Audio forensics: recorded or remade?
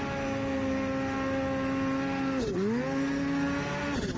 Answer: recorded